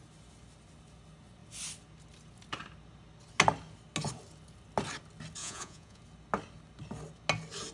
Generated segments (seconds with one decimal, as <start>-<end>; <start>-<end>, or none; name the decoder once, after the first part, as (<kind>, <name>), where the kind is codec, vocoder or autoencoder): 5.4-6.0 (vocoder, Vocos)